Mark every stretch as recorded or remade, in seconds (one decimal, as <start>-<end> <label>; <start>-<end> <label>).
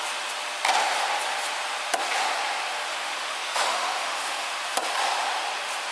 0.0-2.9 recorded; 2.9-4.5 remade; 4.5-5.9 recorded